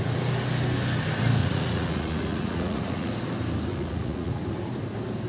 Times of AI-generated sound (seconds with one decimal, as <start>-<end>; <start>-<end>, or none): 1.4-3.1; 3.7-4.4